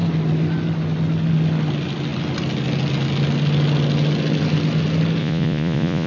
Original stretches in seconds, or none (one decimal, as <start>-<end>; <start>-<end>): 0.0-5.2